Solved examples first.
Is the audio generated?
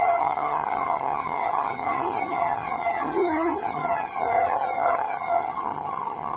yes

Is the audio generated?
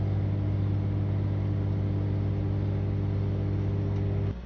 no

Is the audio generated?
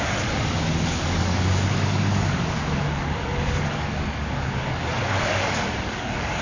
yes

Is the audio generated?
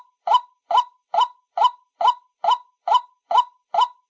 no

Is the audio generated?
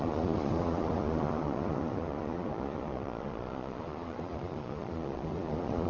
yes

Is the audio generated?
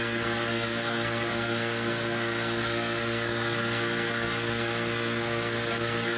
yes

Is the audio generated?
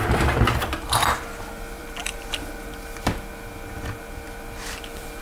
yes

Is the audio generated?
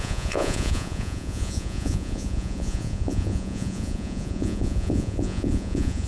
yes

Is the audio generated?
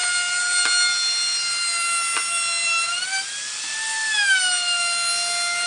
no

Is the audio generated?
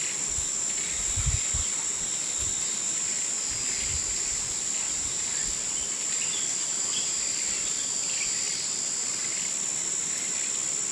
no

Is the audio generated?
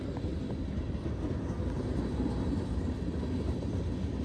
no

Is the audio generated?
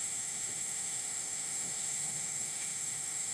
yes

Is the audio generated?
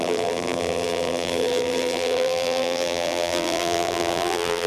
yes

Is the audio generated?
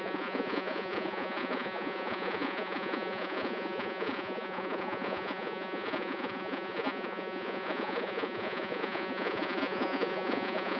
yes